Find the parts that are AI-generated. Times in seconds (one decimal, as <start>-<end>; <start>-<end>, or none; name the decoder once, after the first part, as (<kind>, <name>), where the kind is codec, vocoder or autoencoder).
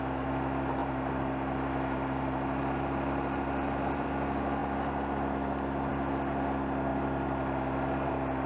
0.8-4.1 (vocoder, BigVGAN v2)